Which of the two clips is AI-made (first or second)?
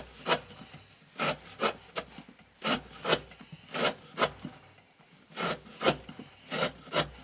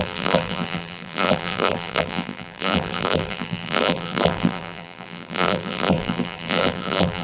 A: second